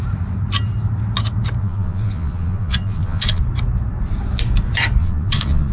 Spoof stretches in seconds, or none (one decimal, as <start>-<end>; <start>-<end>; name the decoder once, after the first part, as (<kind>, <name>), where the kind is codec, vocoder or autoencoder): 1.6-3.4 (vocoder, Vocos); 5.0-5.7